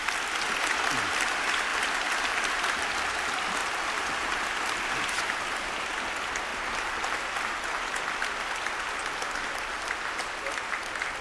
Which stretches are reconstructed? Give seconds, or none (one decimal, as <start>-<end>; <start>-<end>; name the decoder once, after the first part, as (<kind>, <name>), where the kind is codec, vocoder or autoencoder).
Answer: none

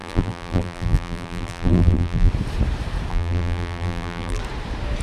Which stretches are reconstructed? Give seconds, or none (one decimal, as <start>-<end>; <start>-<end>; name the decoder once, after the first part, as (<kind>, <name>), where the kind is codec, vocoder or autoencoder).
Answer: 0.0-2.3 (vocoder, BigVGAN v2); 3.1-4.4

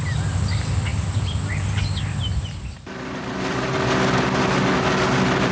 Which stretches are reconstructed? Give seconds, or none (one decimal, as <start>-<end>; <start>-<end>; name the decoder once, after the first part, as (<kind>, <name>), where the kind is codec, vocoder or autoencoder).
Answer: none

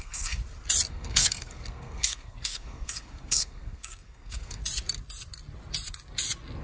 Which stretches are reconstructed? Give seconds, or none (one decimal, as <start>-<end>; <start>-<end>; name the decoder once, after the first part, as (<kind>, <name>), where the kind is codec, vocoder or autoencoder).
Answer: 0.0-0.4 (codec, SNAC); 0.9-4.6

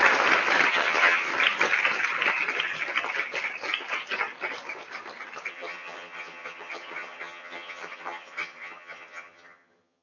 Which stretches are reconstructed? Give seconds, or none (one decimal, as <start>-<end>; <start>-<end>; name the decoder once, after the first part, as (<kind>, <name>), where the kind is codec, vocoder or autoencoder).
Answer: 0.7-1.3 (vocoder, HiFi-GAN); 5.5-10.0

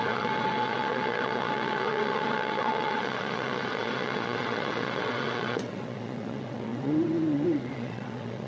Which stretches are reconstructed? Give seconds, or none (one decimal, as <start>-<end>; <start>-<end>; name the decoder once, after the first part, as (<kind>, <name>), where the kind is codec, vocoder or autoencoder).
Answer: 0.0-8.5 (vocoder, WaveNeXt)

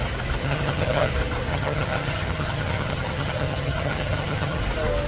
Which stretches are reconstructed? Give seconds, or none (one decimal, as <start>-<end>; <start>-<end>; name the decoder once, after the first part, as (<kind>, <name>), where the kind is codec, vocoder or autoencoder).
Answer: 0.4-1.1 (vocoder, HiFi-GAN); 1.5-4.6